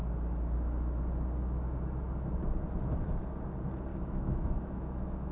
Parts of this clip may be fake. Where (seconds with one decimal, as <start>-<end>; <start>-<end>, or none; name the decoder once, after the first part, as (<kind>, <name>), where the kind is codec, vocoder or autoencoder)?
3.9-5.3 (autoencoder, DAC-VAE)

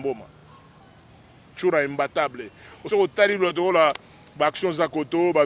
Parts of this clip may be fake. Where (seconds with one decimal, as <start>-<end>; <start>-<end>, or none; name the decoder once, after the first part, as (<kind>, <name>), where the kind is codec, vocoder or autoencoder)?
none

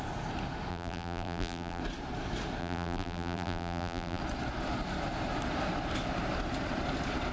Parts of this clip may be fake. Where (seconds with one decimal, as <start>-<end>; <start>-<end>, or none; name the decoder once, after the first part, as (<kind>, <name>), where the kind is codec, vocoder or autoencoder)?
0.7-1.8 (vocoder, BigVGAN v2); 2.6-4.2

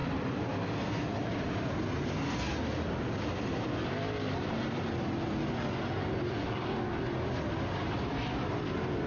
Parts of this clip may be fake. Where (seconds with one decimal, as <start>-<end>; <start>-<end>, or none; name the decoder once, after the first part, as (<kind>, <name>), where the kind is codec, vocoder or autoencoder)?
none

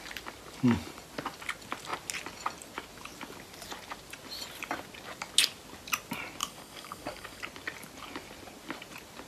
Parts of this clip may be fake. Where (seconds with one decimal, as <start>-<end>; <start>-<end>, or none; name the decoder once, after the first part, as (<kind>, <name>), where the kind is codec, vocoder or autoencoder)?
6.4-7.4 (codec, DAC)

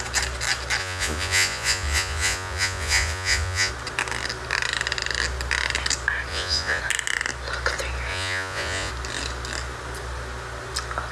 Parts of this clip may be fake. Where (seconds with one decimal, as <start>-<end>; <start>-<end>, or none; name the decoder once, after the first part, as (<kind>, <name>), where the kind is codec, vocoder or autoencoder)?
0.8-3.7 (vocoder, Vocos); 6.3-6.8; 8.1-8.9

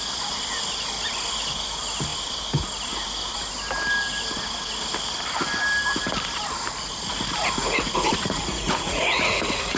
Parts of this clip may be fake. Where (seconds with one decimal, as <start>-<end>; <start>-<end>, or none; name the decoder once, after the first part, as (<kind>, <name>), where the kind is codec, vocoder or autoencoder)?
7.6-9.8 (vocoder, Vocos)